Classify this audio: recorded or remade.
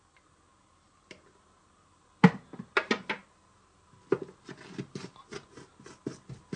recorded